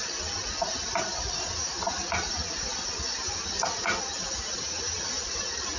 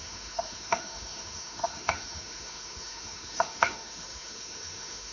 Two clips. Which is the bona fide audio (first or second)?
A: first